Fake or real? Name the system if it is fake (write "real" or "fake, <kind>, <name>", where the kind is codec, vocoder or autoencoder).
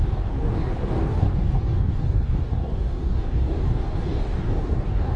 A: fake, codec, DAC